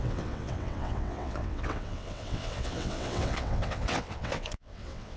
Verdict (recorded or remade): remade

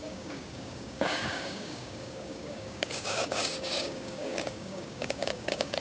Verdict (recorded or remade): remade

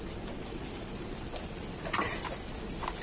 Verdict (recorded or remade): recorded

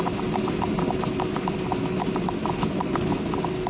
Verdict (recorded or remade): recorded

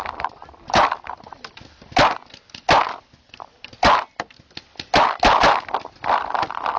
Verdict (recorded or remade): recorded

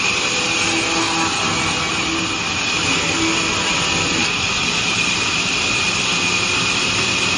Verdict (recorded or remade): recorded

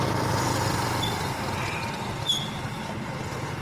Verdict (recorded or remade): recorded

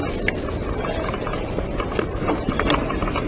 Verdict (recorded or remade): recorded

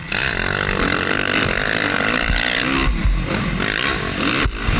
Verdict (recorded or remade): recorded